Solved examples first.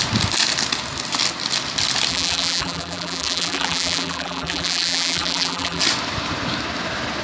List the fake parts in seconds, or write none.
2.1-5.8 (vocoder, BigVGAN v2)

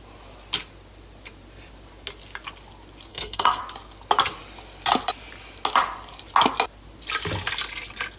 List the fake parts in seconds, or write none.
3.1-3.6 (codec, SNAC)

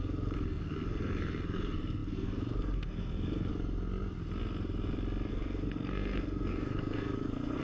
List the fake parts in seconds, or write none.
0.0-3.5 (codec, SNAC); 5.3-7.6

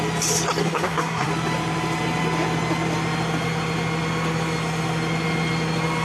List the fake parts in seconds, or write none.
0.6-1.3 (codec, SNAC)

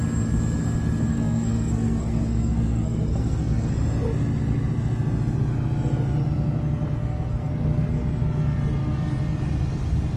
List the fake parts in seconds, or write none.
1.1-3.7 (codec, SNAC); 7.0-7.5